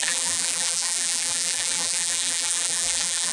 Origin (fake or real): fake